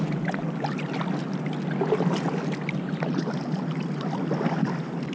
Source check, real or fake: real